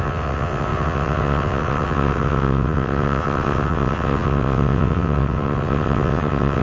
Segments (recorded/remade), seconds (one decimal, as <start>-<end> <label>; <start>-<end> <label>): 0.0-6.6 remade